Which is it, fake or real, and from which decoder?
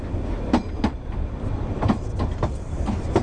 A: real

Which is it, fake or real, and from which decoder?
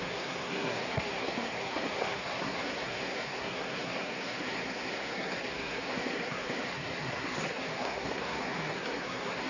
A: fake, codec, SNAC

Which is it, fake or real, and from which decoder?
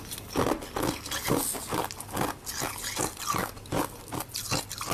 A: real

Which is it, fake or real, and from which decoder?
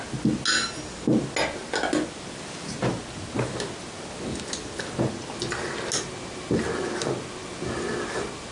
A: real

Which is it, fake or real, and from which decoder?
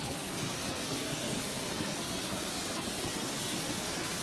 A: fake, codec, SNAC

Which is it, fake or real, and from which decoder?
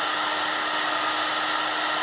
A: real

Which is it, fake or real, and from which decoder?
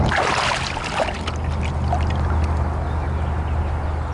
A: real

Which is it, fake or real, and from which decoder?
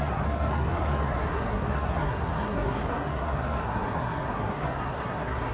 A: fake, codec, SNAC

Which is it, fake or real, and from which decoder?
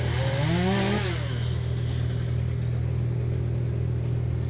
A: real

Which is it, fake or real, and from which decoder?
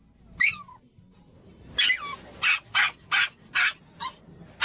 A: real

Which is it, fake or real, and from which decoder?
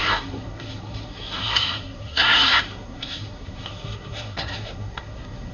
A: fake, codec, SNAC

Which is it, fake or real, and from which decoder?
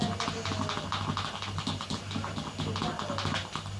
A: real